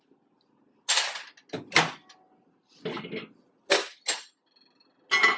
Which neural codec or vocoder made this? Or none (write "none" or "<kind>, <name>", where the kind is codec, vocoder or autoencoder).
none